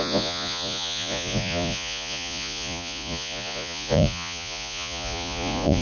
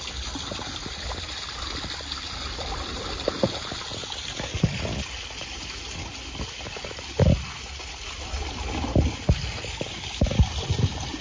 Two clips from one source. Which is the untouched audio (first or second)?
second